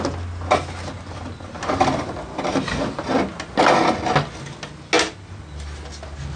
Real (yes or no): yes